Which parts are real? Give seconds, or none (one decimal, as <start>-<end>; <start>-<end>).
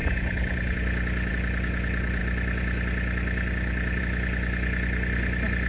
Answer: 0.0-5.7